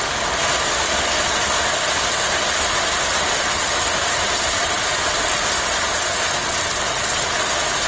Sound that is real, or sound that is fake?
real